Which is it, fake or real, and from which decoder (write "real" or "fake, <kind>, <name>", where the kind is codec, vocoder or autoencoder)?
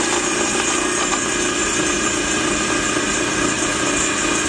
real